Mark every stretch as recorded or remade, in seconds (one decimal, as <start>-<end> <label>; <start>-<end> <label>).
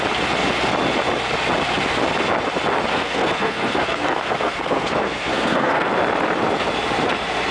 0.0-2.9 recorded; 2.9-5.9 remade; 5.9-7.5 recorded